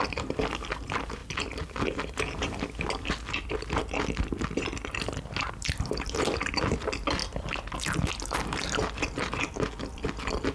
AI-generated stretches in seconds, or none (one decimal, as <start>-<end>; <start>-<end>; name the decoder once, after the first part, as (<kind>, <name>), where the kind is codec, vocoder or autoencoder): none